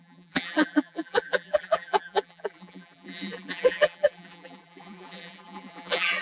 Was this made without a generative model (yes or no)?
no